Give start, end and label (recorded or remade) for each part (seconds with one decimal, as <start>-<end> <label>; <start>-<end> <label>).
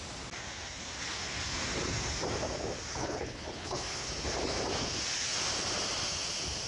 0.0-3.0 recorded; 3.0-4.1 remade; 4.1-6.7 recorded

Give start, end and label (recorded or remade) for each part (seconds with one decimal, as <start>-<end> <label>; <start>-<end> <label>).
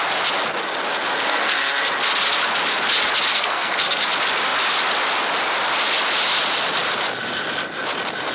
0.0-1.2 recorded; 1.2-1.8 remade; 1.8-3.3 recorded; 3.3-4.0 remade; 4.0-8.3 recorded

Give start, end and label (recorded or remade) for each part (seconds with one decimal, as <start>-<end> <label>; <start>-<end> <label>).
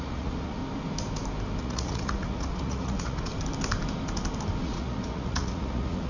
0.0-0.6 remade; 0.6-1.6 recorded; 1.6-3.3 remade; 3.3-4.6 recorded; 4.6-6.1 remade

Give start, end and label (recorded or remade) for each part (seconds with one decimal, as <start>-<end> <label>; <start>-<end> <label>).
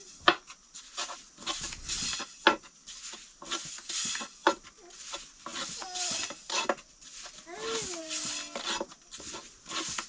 0.0-10.1 recorded